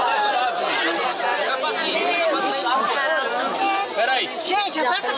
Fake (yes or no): no